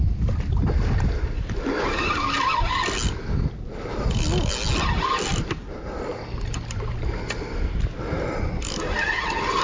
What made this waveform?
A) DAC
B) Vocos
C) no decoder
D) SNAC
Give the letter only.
C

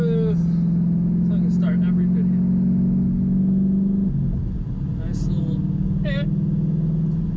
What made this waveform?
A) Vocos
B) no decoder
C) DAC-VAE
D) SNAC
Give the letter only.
B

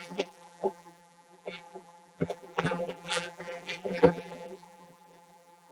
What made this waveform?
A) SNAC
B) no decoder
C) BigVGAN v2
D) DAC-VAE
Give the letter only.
C